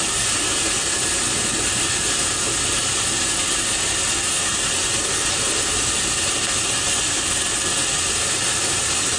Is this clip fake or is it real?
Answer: real